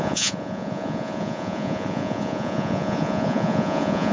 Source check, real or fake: fake